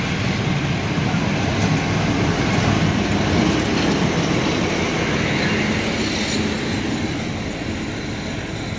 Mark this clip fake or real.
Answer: real